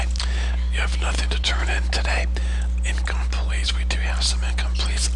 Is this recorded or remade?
recorded